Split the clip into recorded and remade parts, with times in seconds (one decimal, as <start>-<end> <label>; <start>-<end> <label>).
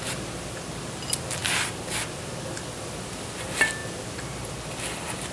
0.0-5.3 recorded